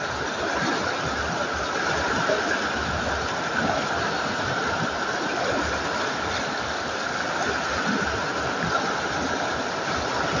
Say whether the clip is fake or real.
real